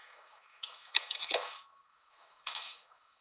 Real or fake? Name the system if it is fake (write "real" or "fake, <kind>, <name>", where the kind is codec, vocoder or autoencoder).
fake, autoencoder, DAC-VAE